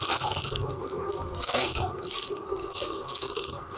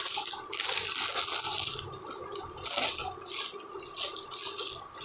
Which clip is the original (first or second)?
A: second